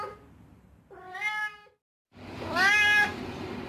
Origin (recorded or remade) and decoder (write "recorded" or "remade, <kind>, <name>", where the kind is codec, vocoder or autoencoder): recorded